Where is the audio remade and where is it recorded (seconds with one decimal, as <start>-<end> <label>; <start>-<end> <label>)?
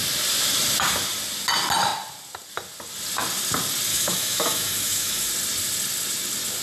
0.0-3.9 recorded; 3.9-5.3 remade; 5.3-6.6 recorded